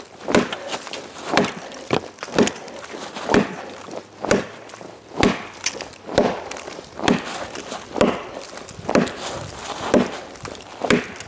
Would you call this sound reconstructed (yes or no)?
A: no